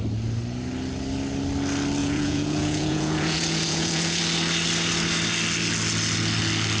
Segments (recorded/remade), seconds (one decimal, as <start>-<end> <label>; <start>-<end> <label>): 0.0-2.0 recorded; 2.0-4.2 remade; 4.2-6.8 recorded